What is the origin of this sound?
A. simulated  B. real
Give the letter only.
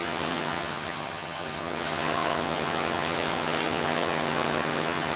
A